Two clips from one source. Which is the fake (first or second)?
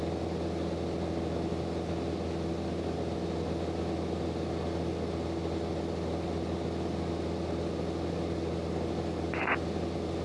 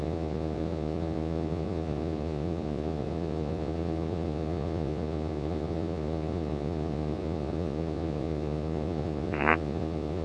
second